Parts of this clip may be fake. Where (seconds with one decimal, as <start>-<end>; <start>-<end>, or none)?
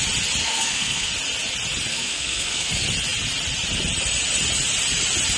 0.4-1.1; 1.9-2.7